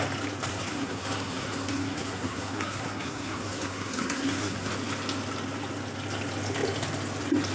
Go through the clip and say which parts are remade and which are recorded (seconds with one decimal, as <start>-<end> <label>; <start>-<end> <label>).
0.0-0.5 recorded; 0.5-4.7 remade; 4.7-7.5 recorded